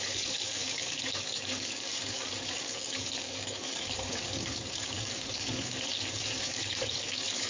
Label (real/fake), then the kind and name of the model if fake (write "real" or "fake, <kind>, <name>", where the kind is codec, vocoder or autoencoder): fake, codec, DAC